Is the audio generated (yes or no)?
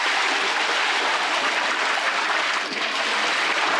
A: no